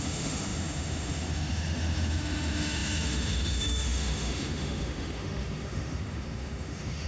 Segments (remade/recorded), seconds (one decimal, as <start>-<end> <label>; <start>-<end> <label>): 0.0-7.1 remade